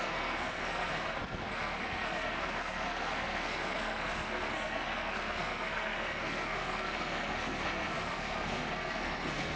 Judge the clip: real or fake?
fake